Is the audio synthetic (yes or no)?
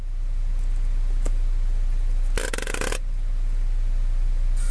no